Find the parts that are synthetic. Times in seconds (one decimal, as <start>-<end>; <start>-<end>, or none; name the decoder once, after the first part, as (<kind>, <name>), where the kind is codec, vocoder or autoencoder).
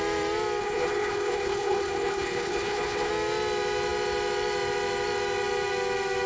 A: 0.6-3.1 (codec, HILCodec)